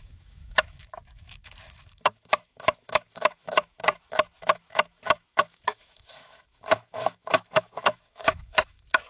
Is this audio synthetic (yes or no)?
yes